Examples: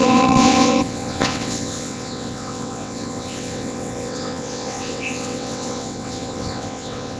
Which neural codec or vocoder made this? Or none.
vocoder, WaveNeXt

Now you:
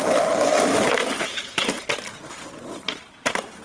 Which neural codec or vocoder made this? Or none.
none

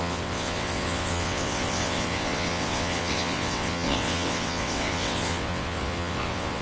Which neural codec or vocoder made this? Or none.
vocoder, WaveNeXt